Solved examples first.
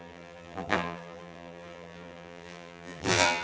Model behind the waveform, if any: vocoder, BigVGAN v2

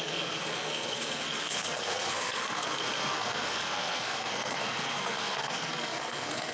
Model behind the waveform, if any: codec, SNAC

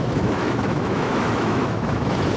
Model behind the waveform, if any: autoencoder, DAC-VAE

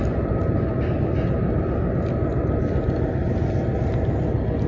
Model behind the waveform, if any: none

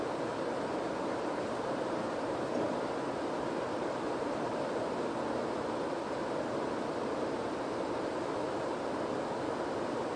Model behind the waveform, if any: vocoder, BigVGAN v2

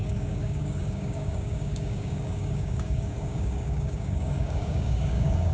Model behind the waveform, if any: codec, DAC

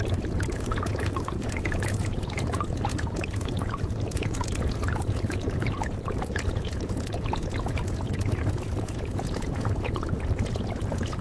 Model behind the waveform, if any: vocoder, Vocos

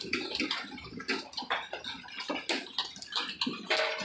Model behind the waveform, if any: none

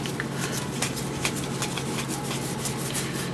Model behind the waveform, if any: none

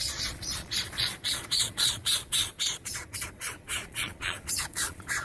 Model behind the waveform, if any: vocoder, Vocos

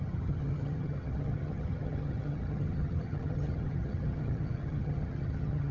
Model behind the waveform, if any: vocoder, HiFi-GAN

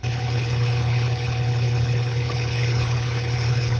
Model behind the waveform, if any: codec, HILCodec